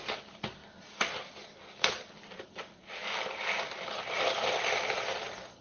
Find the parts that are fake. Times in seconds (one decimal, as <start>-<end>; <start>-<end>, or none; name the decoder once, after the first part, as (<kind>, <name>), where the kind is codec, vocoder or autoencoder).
none